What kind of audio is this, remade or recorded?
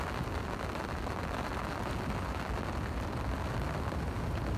recorded